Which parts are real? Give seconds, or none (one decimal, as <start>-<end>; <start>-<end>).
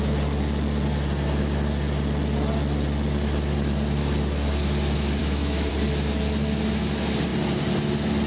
0.0-5.2; 5.7-8.3